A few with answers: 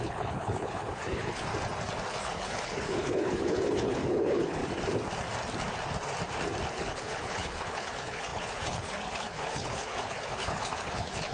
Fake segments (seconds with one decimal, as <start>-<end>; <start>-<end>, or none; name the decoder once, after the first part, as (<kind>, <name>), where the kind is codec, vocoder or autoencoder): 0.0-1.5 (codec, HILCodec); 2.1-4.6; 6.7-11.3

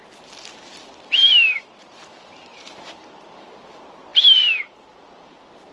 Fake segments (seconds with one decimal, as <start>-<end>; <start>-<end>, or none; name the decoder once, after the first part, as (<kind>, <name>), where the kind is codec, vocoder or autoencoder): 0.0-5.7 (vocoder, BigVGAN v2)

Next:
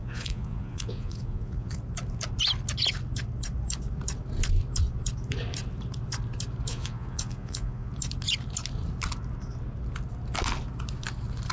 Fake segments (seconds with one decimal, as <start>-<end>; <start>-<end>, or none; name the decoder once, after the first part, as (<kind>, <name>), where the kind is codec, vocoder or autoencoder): 0.0-1.8 (vocoder, Vocos); 6.7-7.9

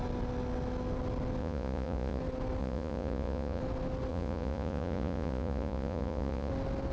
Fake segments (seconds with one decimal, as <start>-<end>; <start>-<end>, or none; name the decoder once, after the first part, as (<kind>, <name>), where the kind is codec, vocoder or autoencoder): 1.4-2.2 (vocoder, Vocos); 2.6-3.6; 4.1-6.5

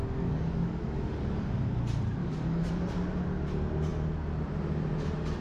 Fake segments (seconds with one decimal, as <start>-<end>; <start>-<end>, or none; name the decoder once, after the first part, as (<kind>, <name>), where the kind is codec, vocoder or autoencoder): 0.0-1.5 (codec, DAC); 2.2-2.7